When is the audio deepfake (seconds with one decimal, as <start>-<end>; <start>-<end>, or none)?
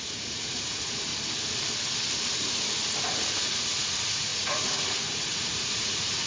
0.0-1.1; 3.0-6.3